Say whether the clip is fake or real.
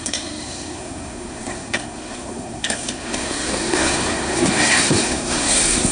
fake